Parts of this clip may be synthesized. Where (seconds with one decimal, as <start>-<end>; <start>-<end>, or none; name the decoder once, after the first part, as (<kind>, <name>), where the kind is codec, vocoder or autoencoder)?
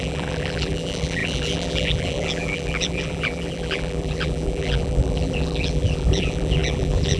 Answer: 0.0-7.2 (vocoder, BigVGAN v2)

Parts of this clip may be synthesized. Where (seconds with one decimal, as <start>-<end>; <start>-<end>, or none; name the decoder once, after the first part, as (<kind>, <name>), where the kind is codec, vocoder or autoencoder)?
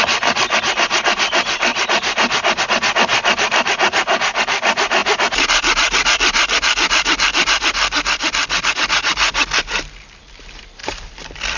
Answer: 1.7-2.6 (vocoder, BigVGAN v2); 10.8-11.6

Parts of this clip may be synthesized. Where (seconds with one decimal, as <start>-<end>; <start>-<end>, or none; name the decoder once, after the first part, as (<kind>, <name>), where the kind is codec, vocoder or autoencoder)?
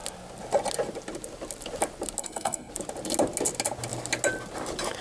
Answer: 2.2-2.7 (codec, SNAC)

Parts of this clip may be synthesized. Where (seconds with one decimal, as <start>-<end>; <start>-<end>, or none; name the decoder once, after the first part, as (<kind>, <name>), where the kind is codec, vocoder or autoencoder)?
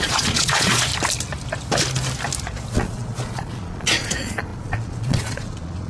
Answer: 0.0-0.9 (vocoder, Vocos); 2.7-5.9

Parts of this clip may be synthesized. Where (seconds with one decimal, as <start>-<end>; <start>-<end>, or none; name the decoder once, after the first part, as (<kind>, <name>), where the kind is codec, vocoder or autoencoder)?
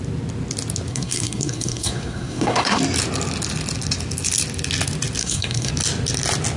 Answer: 0.9-2.8 (codec, SNAC); 5.2-5.7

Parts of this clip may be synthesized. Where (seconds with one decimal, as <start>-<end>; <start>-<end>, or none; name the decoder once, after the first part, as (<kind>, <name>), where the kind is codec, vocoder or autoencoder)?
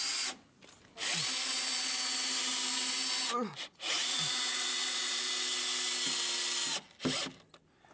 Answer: 3.5-5.3 (vocoder, Vocos)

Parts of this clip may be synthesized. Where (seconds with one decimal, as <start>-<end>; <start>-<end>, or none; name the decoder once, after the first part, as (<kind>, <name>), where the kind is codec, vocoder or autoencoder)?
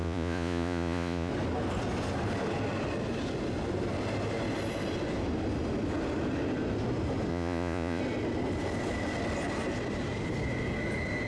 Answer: 0.0-1.3 (vocoder, Vocos); 7.3-8.0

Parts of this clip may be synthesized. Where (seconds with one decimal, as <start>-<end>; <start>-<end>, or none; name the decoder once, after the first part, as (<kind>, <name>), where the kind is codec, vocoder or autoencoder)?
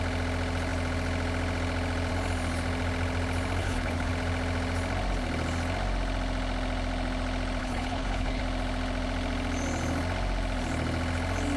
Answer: 3.6-4.1 (codec, HILCodec); 7.6-8.4